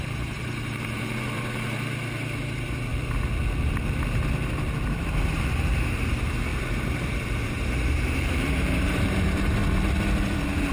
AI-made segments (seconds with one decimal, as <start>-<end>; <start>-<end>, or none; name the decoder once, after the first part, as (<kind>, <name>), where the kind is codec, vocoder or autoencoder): 0.0-2.9 (vocoder, BigVGAN v2); 5.5-9.6